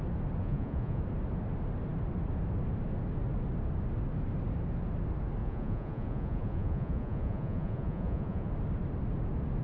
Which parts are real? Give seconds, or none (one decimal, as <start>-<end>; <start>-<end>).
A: 0.0-0.4; 1.0-5.4; 8.5-9.6

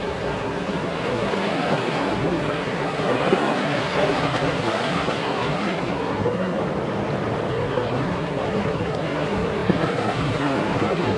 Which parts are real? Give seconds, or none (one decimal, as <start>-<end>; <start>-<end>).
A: 6.6-7.5

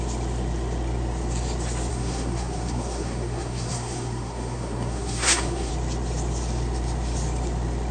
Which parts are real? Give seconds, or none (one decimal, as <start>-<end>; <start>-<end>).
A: 0.0-1.9; 5.7-7.9

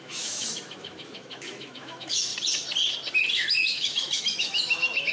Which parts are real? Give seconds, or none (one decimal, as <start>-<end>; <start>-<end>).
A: 2.3-3.3

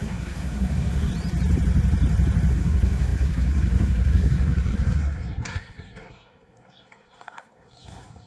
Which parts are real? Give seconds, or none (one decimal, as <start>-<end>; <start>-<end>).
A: 1.1-2.5